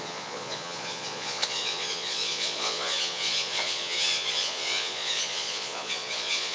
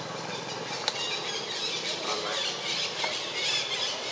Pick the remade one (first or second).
first